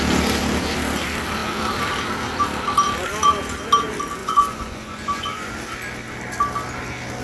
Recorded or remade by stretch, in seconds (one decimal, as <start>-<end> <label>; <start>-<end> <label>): 0.0-4.2 recorded; 4.2-5.5 remade; 5.5-7.2 recorded